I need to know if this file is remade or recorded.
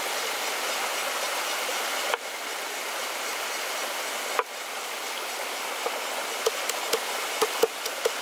recorded